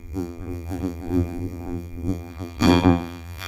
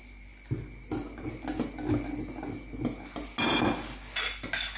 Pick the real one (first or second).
second